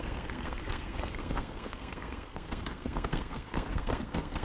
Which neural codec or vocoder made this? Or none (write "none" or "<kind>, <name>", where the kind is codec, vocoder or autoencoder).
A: codec, SNAC